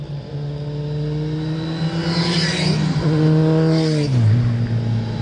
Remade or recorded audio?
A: recorded